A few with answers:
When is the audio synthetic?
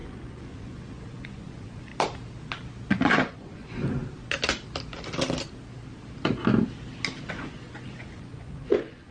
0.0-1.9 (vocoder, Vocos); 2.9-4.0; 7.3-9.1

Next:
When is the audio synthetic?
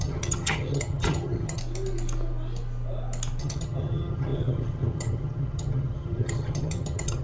0.0-1.6 (vocoder, HiFi-GAN); 3.4-7.2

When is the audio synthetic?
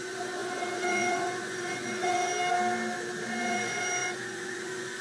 0.0-2.3 (vocoder, Vocos); 3.4-5.0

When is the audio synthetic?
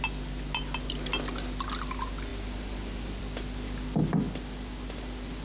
none